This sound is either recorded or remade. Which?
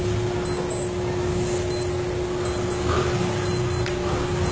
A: recorded